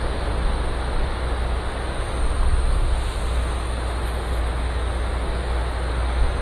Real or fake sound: real